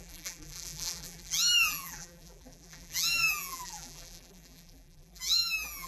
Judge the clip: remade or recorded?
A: remade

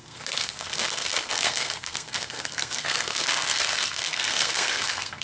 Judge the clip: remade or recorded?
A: remade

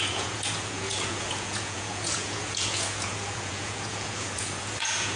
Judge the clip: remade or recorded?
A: remade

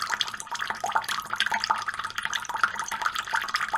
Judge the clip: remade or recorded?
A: remade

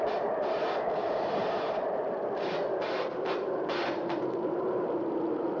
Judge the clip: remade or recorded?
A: recorded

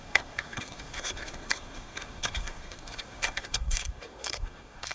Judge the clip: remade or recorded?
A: remade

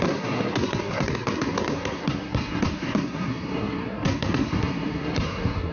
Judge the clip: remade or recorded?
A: remade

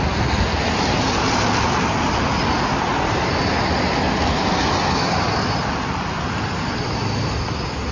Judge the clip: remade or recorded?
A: recorded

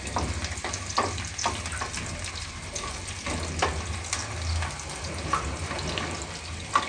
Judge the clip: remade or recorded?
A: recorded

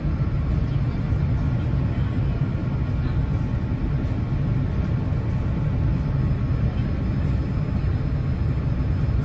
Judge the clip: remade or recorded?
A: recorded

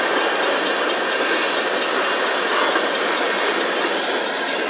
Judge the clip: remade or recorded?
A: recorded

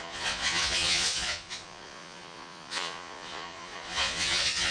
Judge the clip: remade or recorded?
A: remade